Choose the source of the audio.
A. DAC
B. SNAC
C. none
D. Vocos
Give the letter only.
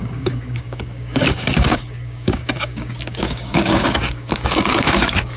A